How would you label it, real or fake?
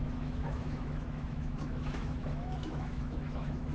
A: fake